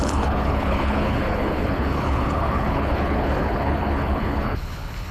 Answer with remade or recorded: remade